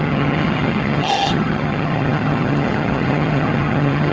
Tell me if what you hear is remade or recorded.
remade